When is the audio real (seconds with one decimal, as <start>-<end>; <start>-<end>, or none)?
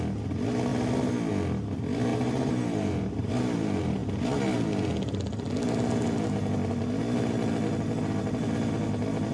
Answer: 0.0-2.1; 3.3-9.3